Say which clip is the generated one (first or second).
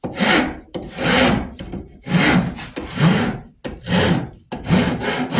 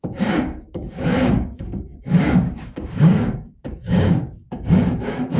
second